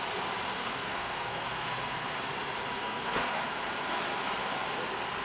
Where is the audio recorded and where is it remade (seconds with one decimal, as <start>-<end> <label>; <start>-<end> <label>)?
0.0-0.5 recorded; 0.5-2.1 remade; 2.1-2.8 recorded; 2.8-3.4 remade; 3.4-5.2 recorded